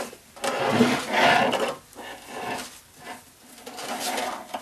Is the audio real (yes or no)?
yes